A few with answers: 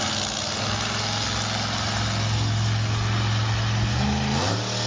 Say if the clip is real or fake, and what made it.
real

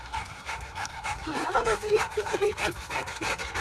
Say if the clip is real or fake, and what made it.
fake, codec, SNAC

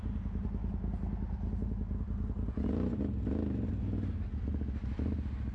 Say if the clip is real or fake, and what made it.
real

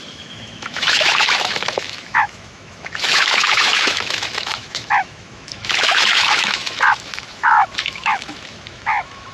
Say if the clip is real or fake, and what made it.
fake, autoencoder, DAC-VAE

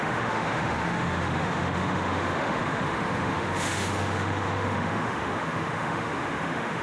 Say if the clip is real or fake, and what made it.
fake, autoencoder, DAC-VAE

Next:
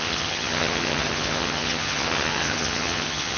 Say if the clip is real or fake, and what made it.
fake, vocoder, HiFi-GAN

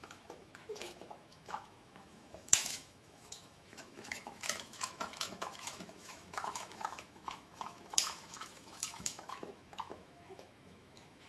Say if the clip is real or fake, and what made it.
fake, autoencoder, DAC-VAE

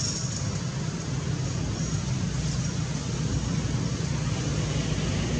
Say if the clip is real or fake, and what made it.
real